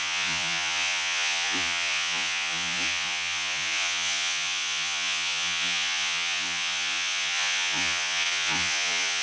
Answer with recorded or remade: remade